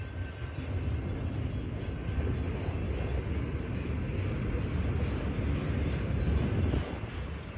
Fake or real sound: real